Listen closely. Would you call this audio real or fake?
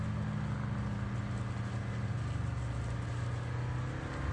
real